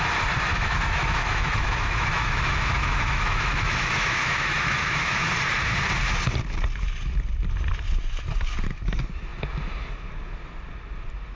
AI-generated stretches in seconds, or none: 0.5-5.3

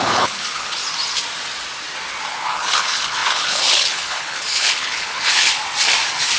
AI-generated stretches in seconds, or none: 0.0-0.8; 2.3-5.5

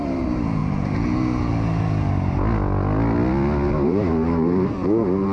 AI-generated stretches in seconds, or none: 0.0-0.6; 3.7-5.3

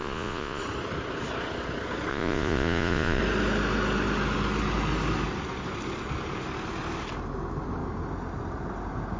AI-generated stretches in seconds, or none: 0.0-0.6; 2.1-3.2

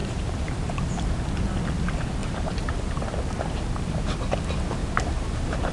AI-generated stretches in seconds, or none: 0.0-1.1; 2.2-2.7; 4.8-5.7

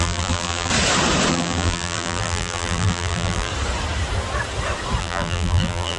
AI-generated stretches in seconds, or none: 0.0-0.7; 1.3-3.5; 5.0-6.0

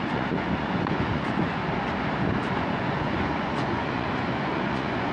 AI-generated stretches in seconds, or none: 0.0-1.6; 2.6-5.1

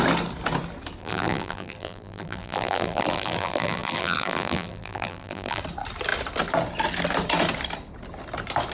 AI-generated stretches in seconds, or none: 1.0-5.6